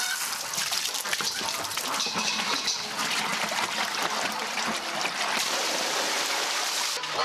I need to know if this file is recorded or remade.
recorded